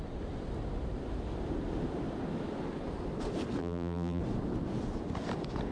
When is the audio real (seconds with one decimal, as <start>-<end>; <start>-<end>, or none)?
0.0-3.6; 4.2-5.7

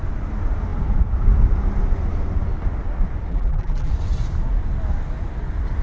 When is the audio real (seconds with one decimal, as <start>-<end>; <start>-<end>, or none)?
0.0-3.3; 3.9-5.8

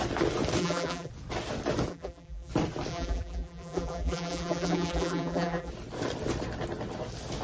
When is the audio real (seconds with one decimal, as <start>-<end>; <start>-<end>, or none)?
0.0-0.6; 1.1-1.9; 2.5-2.9; 5.7-7.4

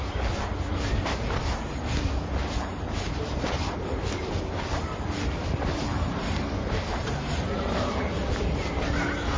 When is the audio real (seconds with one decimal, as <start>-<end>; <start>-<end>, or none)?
0.0-0.7; 2.1-2.7; 3.7-6.2; 7.6-9.4

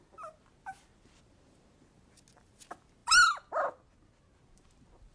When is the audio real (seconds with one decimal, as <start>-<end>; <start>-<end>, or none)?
0.0-5.1